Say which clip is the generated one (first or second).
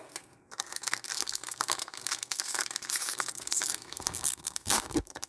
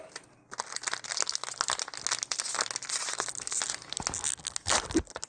first